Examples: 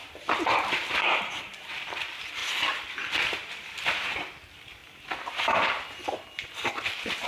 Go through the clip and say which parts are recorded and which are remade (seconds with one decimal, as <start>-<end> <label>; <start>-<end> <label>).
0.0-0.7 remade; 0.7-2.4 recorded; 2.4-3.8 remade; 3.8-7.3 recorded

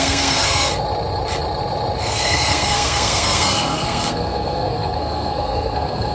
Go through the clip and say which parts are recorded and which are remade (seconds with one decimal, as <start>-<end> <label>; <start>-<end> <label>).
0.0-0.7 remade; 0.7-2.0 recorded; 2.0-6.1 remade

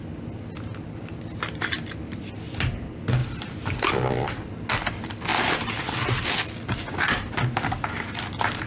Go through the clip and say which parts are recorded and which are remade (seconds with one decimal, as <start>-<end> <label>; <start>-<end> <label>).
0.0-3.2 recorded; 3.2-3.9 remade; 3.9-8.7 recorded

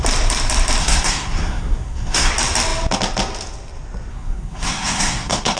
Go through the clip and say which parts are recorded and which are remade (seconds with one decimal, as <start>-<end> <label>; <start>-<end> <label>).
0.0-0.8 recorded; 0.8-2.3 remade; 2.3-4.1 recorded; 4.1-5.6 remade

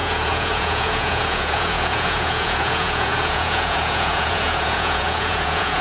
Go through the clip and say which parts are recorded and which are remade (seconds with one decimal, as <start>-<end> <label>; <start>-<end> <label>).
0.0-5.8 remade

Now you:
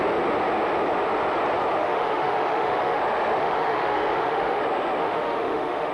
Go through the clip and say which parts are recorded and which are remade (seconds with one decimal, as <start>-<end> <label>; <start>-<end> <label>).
0.0-1.8 recorded; 1.8-3.0 remade; 3.0-3.4 recorded; 3.4-4.6 remade; 4.6-5.0 recorded; 5.0-5.9 remade

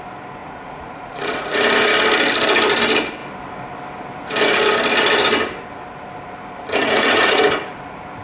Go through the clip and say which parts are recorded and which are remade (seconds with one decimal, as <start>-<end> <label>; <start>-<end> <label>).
0.0-0.4 recorded; 0.4-1.5 remade; 1.5-6.7 recorded; 6.7-7.4 remade; 7.4-8.2 recorded